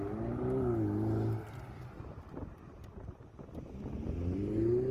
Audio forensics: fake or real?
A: real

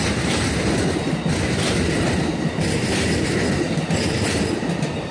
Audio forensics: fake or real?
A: real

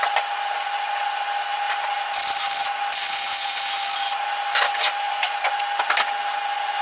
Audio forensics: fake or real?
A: real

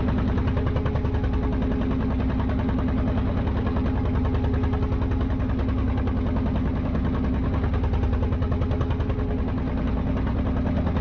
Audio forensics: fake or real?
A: real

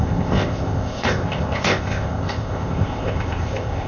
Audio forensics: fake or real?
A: fake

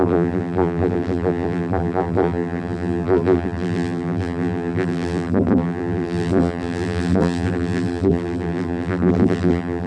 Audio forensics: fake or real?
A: fake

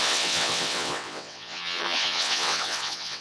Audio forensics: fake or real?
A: fake